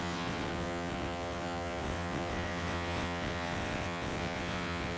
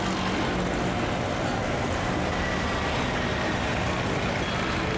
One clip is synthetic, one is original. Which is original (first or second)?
second